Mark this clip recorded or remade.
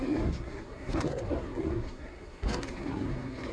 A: remade